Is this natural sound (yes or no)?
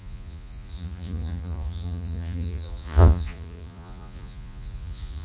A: no